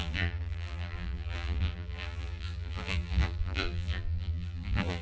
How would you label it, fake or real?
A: fake